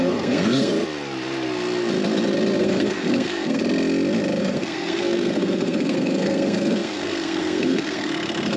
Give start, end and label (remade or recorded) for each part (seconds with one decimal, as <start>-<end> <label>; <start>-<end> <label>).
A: 0.0-0.7 remade; 0.7-2.6 recorded; 2.6-3.6 remade; 3.6-4.4 recorded; 4.4-8.6 remade